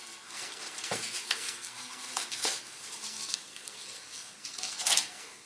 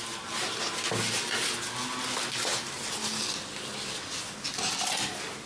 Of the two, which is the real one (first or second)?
second